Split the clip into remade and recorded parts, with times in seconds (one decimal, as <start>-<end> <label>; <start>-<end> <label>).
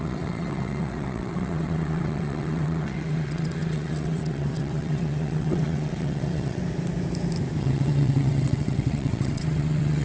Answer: 0.0-6.6 remade; 6.6-7.6 recorded; 7.6-10.0 remade